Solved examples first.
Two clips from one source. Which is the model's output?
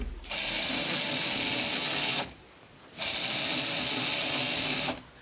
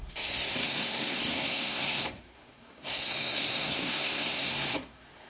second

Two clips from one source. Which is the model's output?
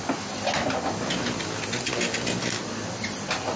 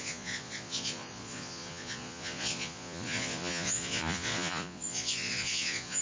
second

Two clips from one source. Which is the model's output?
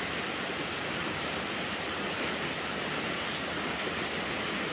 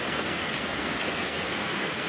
second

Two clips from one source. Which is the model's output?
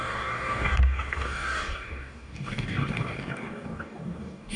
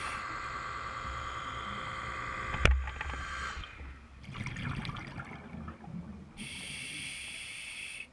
first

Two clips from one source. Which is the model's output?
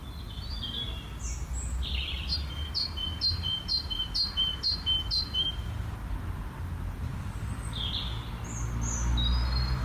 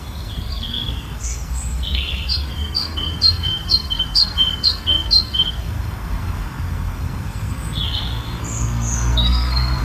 second